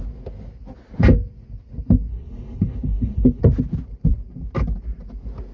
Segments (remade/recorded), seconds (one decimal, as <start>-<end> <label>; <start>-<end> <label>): 0.0-2.1 recorded; 2.1-3.4 remade; 3.4-5.5 recorded

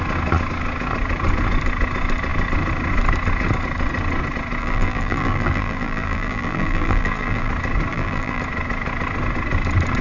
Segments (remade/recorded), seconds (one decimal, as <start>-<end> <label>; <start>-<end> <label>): 0.0-4.6 recorded; 4.6-7.5 remade; 7.5-7.9 recorded; 7.9-8.4 remade; 8.4-10.0 recorded

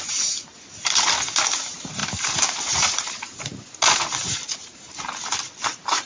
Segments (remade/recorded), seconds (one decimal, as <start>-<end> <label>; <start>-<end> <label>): 0.0-6.1 remade

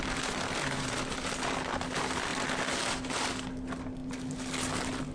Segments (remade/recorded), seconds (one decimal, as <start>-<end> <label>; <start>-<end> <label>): 0.0-5.1 recorded